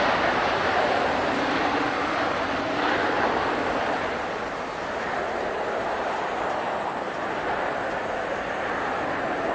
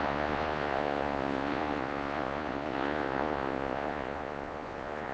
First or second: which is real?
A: first